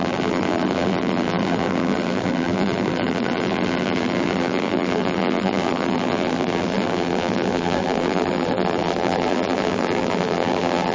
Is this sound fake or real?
fake